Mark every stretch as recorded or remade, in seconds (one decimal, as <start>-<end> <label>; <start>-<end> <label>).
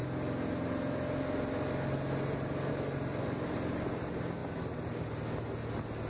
0.0-6.1 recorded